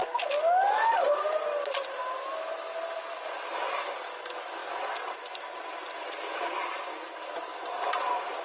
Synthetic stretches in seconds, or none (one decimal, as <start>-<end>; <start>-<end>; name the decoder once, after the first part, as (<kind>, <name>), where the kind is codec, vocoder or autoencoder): none